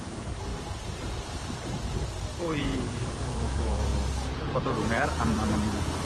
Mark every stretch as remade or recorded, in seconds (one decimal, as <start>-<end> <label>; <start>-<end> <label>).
0.0-1.9 remade; 1.9-2.6 recorded; 2.6-3.9 remade; 3.9-4.5 recorded; 4.5-6.1 remade